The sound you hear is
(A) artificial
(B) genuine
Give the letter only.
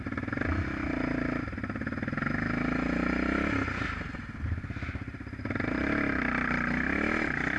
B